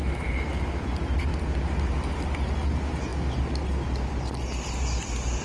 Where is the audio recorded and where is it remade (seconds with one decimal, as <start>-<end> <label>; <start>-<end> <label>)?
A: 0.0-5.4 recorded